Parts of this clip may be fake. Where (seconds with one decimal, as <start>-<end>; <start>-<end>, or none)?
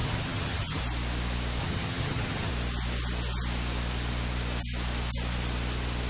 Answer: 0.0-0.8; 1.6-2.5